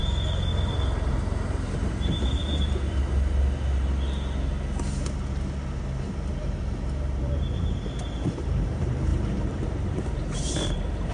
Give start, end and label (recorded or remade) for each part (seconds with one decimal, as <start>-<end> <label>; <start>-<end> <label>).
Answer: 0.0-0.5 remade; 0.5-1.1 recorded; 1.1-2.4 remade; 2.4-5.8 recorded; 5.8-11.1 remade